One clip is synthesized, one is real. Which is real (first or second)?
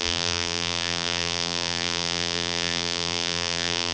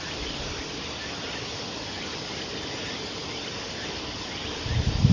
second